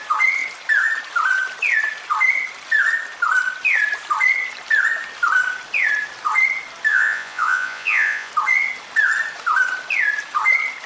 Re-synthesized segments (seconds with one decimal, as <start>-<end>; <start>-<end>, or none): 6.9-8.3